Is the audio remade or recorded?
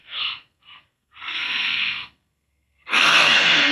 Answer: remade